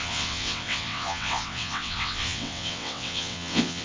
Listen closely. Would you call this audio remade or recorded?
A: remade